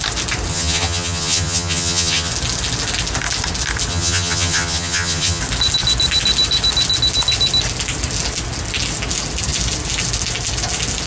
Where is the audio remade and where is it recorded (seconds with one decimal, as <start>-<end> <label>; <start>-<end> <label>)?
0.0-0.5 recorded; 0.5-2.3 remade; 2.3-3.9 recorded; 3.9-5.4 remade; 5.4-11.1 recorded